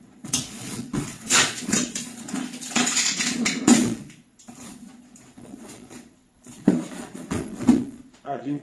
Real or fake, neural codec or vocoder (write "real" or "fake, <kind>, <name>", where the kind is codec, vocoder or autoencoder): fake, vocoder, Vocos